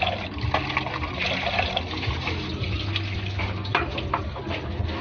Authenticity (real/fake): real